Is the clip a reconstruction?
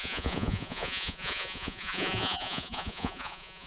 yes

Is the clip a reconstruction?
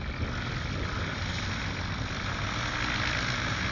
no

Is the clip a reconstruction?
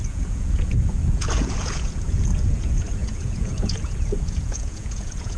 yes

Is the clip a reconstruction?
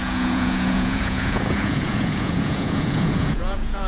yes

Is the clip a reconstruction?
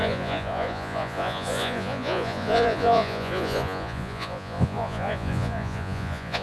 yes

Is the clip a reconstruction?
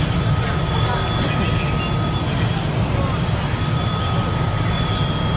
no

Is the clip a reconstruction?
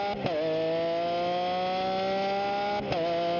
no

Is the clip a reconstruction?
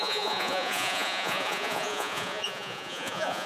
yes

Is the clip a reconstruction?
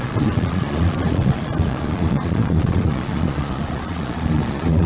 yes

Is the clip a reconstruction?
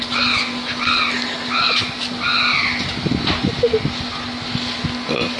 no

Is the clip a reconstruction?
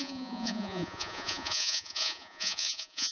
yes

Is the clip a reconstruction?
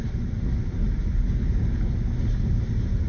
no